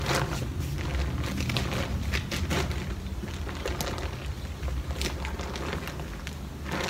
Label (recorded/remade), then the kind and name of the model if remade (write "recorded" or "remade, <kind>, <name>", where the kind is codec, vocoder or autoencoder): recorded